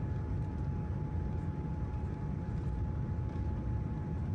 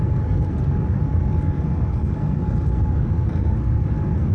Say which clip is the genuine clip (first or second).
first